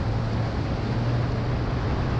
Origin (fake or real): real